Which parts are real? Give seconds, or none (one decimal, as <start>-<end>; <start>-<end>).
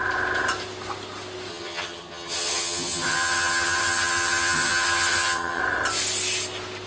0.0-1.5; 5.6-6.9